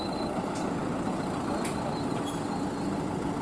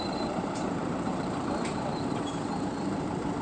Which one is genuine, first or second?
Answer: first